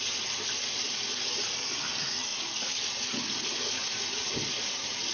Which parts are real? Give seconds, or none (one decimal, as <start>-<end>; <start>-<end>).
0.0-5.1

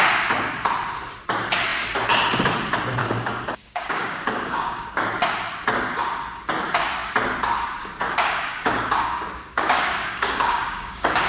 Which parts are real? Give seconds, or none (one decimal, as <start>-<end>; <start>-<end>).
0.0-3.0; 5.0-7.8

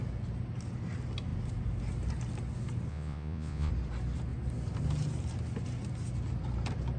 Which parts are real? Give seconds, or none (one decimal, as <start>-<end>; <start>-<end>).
0.0-2.9; 3.7-7.0

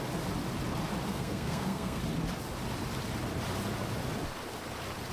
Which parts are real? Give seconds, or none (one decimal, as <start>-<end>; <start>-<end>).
0.0-1.1; 2.0-5.1

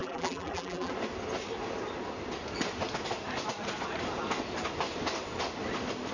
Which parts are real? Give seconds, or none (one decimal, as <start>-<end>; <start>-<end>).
0.9-6.1

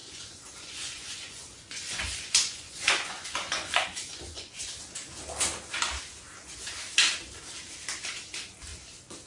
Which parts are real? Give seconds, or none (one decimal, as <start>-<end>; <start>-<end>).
4.7-9.3

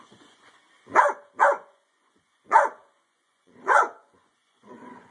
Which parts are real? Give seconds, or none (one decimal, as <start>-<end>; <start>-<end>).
0.6-1.4

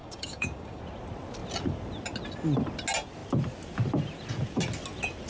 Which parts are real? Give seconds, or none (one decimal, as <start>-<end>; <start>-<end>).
0.8-5.3